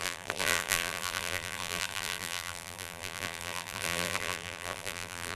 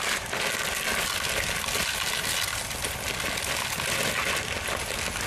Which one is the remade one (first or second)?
first